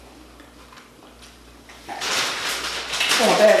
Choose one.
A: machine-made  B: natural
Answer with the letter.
B